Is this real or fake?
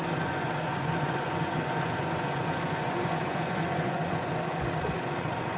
fake